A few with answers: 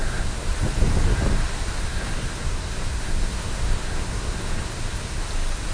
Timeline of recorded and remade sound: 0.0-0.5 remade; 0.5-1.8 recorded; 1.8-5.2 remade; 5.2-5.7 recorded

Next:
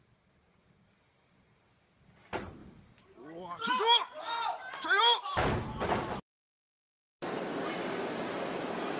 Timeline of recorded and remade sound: 0.0-9.0 recorded